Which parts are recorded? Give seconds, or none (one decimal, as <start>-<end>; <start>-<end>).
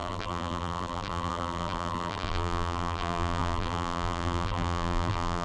none